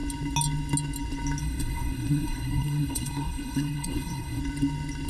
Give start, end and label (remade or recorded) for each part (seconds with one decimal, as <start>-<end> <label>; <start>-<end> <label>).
0.0-1.4 recorded; 1.4-4.4 remade; 4.4-5.1 recorded